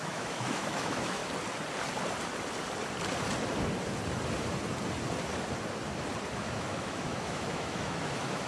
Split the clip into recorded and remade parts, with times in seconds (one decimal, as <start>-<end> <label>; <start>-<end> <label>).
0.0-1.2 remade; 1.2-6.3 recorded; 6.3-8.5 remade